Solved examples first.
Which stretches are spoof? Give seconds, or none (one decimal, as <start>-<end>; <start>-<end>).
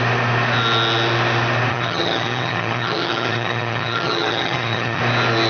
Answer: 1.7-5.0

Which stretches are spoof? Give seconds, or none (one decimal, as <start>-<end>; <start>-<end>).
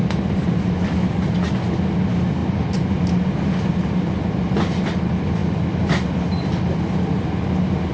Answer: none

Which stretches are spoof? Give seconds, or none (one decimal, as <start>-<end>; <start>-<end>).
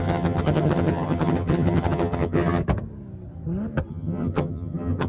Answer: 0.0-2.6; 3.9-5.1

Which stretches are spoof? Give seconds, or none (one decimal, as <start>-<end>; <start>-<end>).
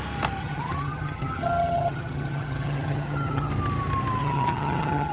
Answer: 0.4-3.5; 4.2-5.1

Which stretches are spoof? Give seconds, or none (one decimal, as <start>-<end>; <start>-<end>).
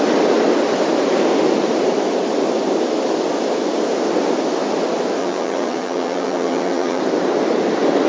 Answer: 5.2-7.0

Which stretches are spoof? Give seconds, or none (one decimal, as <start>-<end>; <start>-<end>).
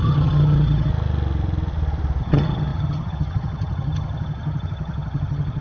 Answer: 0.0-0.9; 2.2-5.6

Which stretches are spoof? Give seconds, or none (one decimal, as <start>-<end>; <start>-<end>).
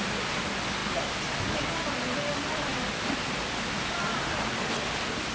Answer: none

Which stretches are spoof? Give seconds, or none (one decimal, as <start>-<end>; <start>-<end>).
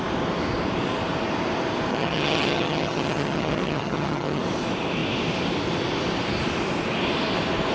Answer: 1.9-4.4